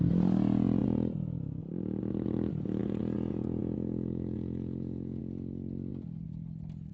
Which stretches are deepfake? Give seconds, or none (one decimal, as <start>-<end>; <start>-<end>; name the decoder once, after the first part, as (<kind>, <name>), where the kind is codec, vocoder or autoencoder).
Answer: 0.8-1.6 (vocoder, Vocos); 2.8-5.2